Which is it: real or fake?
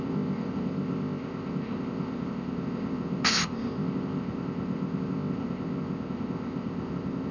fake